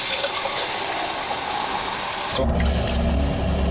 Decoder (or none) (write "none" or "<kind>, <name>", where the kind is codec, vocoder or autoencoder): none